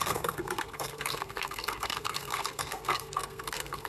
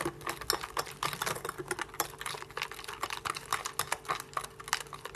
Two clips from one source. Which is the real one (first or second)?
second